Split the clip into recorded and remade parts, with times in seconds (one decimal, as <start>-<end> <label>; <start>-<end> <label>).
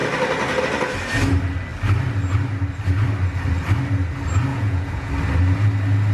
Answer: 0.0-4.5 recorded; 4.5-5.1 remade; 5.1-6.1 recorded